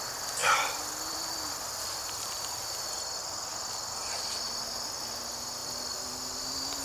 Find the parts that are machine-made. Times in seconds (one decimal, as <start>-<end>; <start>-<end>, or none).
0.4-4.5; 5.6-6.8